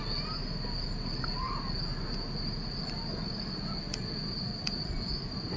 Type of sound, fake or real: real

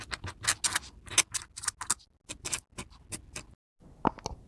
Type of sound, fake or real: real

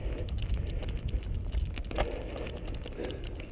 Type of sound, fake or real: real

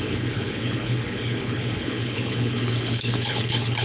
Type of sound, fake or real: fake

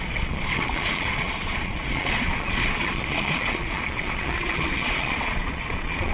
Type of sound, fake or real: fake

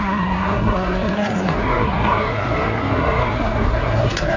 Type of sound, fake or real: fake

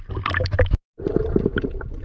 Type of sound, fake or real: real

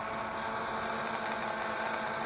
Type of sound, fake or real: real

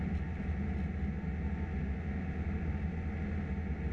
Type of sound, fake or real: real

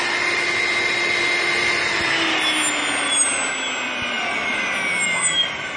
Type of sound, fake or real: real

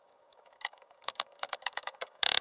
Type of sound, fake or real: fake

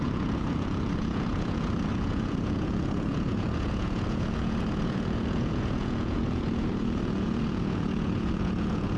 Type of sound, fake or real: fake